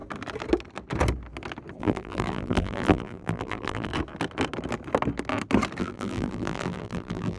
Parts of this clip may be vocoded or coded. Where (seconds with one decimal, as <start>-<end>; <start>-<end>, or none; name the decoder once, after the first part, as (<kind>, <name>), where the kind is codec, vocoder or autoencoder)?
1.8-3.9 (vocoder, BigVGAN v2); 5.8-7.4